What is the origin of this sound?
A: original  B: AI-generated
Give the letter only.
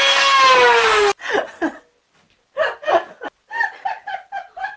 A